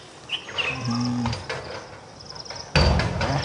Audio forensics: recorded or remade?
recorded